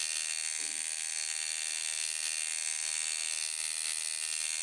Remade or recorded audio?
recorded